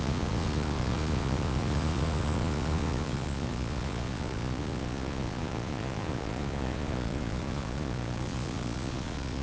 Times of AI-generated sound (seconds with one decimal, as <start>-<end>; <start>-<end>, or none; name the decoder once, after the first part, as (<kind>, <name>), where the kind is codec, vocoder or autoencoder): 0.0-9.4 (vocoder, Vocos)